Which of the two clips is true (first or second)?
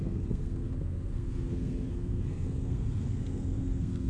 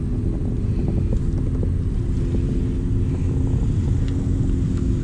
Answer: second